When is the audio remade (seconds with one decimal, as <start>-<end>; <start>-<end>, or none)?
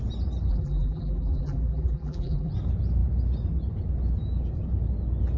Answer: 0.5-2.5